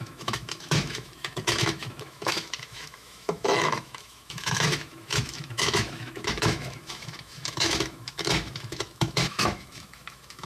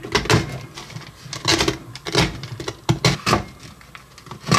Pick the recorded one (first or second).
second